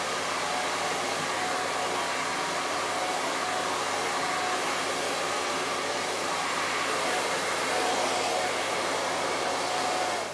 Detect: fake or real real